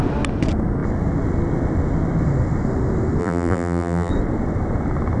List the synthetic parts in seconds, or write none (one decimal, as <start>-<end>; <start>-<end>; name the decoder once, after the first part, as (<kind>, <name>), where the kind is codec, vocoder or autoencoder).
3.2-4.1 (vocoder, BigVGAN v2)